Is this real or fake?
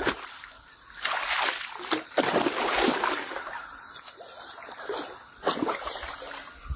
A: real